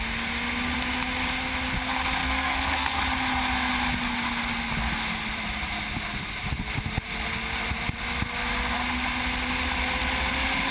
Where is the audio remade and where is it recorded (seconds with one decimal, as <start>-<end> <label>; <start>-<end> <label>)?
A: 0.0-2.2 recorded; 2.2-3.0 remade; 3.0-10.7 recorded